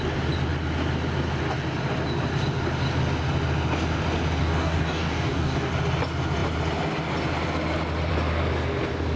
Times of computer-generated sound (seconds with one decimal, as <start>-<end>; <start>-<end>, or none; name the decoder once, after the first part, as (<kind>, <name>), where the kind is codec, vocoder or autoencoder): 4.4-5.7 (codec, DAC)